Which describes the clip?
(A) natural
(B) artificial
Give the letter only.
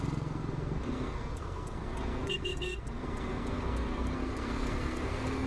B